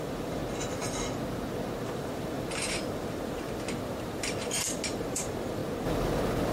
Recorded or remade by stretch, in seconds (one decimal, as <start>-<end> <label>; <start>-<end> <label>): 0.0-0.4 remade; 0.4-1.9 recorded; 1.9-5.6 remade; 5.6-6.5 recorded